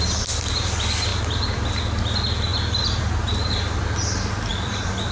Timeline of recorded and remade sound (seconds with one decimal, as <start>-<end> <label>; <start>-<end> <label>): 0.0-1.1 recorded; 1.1-1.8 remade; 1.8-2.5 recorded; 2.5-3.8 remade; 3.8-4.5 recorded; 4.5-5.1 remade

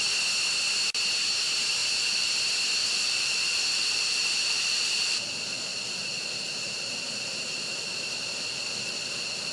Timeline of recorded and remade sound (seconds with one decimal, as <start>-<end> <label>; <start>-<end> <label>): 0.0-1.8 recorded; 1.8-2.4 remade; 2.4-2.8 recorded; 2.8-5.3 remade; 5.3-6.0 recorded; 6.0-7.7 remade; 7.7-9.5 recorded

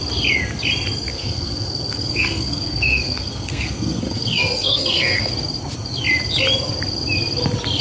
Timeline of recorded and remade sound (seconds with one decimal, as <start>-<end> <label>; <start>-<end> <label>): 0.0-1.1 recorded; 1.1-5.3 remade; 5.3-7.8 recorded

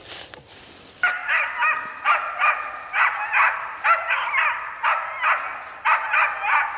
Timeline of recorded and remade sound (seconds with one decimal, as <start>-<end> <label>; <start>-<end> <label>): 0.0-6.8 recorded

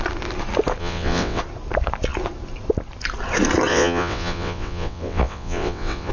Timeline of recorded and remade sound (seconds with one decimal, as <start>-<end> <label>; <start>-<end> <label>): 0.0-0.8 recorded; 0.8-1.4 remade; 1.4-3.7 recorded; 3.7-6.1 remade

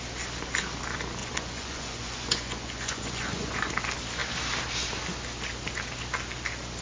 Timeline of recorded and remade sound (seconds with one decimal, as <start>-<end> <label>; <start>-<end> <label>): 0.0-1.2 recorded; 1.2-3.7 remade; 3.7-6.8 recorded